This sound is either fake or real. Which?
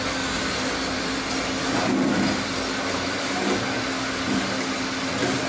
real